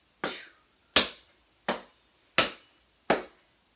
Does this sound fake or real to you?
real